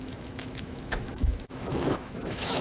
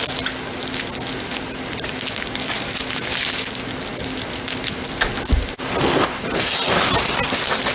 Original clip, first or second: second